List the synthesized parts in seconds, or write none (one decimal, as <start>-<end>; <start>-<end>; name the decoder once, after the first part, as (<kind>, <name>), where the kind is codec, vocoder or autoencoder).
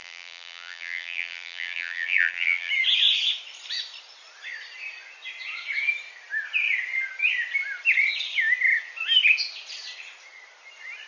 0.0-2.7 (vocoder, BigVGAN v2)